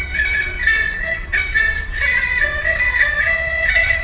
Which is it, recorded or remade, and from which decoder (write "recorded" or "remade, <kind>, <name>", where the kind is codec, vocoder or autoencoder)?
remade, vocoder, WaveNeXt